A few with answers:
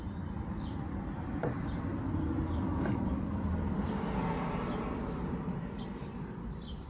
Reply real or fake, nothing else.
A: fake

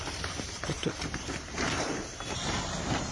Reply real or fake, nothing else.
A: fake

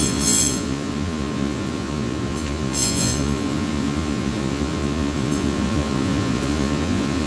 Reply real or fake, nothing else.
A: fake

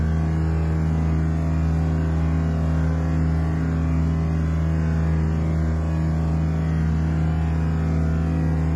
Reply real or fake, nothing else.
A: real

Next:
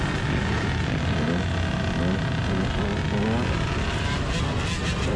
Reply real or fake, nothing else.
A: real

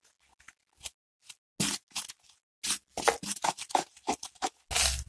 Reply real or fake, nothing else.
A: real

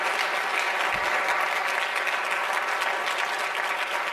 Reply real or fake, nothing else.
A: real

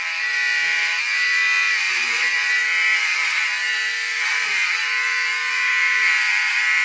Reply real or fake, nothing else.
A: fake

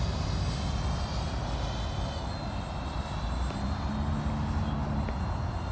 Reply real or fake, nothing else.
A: real